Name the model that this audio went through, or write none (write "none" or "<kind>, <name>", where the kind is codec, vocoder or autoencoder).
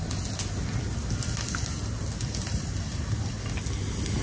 none